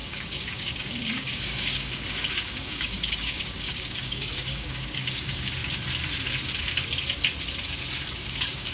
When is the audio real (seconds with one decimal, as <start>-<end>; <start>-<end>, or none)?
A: 5.6-8.1